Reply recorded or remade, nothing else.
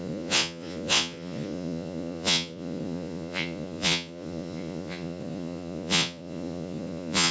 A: remade